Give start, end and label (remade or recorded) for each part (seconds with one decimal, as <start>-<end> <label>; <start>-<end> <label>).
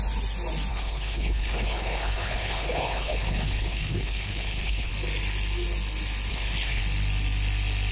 0.0-0.7 recorded; 0.7-4.9 remade; 4.9-6.3 recorded; 6.3-6.8 remade; 6.8-7.9 recorded